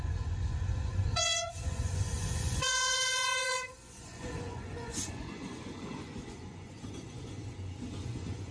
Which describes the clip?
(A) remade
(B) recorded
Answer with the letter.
A